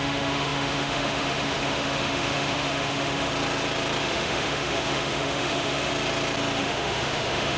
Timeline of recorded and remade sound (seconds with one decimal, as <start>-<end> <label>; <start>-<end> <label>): 0.0-3.3 remade; 3.3-4.0 recorded; 4.0-5.9 remade; 5.9-6.6 recorded; 6.6-7.6 remade